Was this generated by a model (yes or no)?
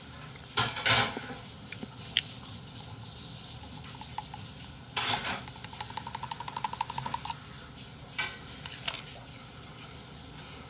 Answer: no